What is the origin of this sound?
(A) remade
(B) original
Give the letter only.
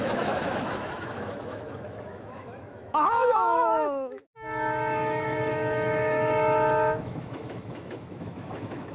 A